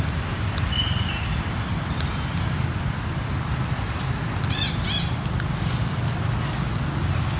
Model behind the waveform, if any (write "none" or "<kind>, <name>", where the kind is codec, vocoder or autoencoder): none